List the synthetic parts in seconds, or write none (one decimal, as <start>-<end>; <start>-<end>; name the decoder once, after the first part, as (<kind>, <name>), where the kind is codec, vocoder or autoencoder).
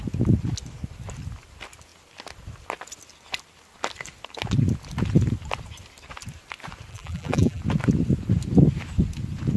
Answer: 6.9-7.6 (vocoder, BigVGAN v2)